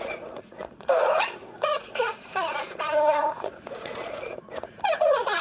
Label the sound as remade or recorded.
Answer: remade